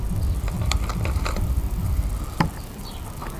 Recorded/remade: remade